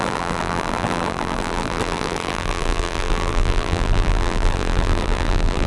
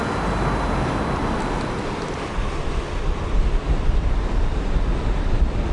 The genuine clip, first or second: second